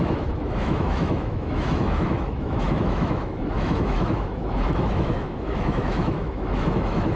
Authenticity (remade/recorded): remade